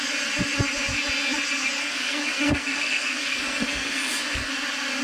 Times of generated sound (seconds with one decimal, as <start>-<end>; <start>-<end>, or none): 1.8-4.5